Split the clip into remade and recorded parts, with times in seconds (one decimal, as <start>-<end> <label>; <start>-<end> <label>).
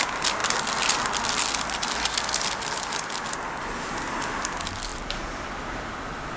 0.0-6.4 recorded